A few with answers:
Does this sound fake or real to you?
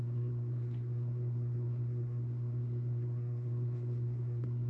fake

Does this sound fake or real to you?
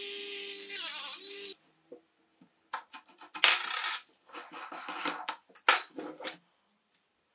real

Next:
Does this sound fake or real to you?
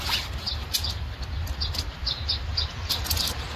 real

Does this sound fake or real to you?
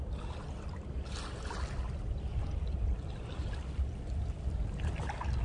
real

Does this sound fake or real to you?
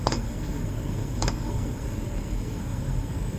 fake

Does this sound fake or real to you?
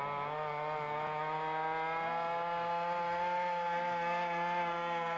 real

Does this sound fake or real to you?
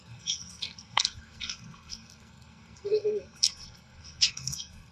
fake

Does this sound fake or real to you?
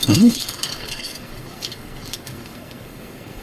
fake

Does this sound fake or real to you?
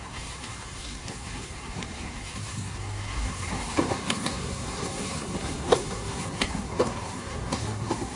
fake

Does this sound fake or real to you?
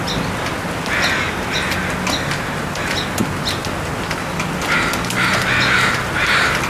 real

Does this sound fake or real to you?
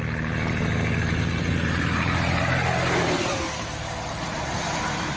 real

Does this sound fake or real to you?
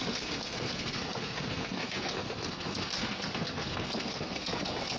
fake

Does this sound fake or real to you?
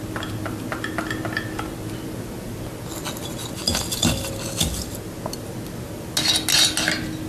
real